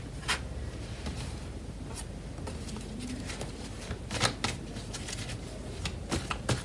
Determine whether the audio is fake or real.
real